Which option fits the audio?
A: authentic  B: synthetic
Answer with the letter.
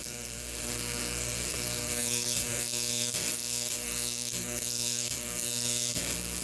B